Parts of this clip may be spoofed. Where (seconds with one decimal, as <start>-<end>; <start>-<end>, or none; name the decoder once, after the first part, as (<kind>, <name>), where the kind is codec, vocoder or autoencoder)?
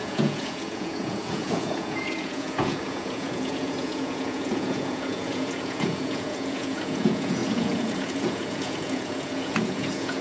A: 0.0-10.2 (vocoder, Vocos)